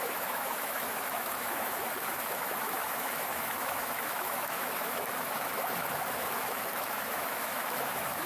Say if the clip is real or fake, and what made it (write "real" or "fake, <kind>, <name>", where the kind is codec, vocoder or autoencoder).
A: fake, autoencoder, DAC-VAE